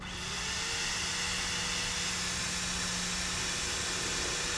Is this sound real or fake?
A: real